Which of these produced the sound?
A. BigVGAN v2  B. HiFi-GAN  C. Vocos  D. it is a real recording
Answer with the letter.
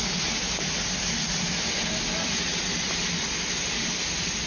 D